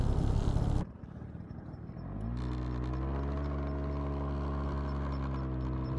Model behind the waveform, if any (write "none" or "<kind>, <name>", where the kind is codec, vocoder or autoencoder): none